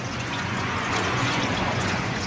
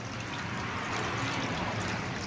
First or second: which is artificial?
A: first